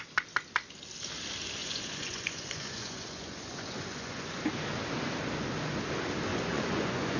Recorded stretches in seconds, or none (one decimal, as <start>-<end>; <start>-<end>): 0.0-1.6; 4.5-6.3